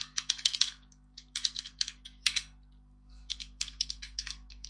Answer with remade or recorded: remade